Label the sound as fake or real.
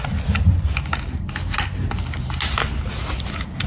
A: real